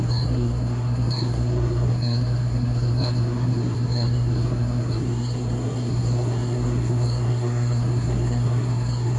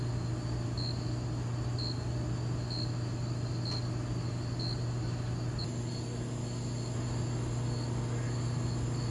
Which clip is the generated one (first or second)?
first